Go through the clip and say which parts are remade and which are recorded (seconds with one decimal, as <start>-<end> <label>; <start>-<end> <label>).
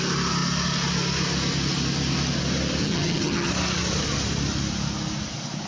0.0-2.8 recorded; 2.8-3.5 remade; 3.5-5.7 recorded